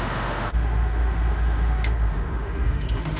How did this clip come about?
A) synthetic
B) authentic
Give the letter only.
A